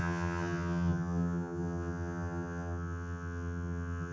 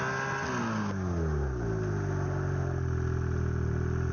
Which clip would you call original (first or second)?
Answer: second